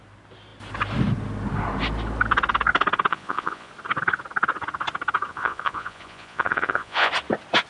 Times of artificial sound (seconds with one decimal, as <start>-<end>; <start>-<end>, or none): 3.1-3.7; 5.3-7.1